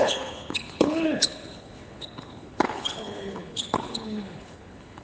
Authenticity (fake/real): fake